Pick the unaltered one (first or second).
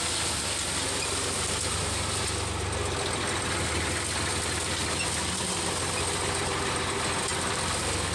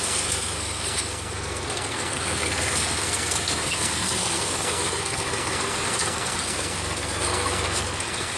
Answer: first